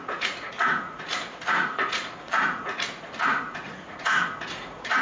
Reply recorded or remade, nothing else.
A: remade